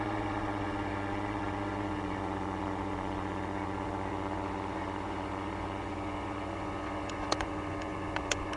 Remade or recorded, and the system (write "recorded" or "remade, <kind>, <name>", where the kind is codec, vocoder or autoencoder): remade, vocoder, Vocos